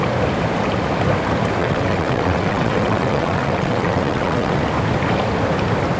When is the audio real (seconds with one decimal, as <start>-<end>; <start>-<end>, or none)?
0.0-1.6; 4.6-6.0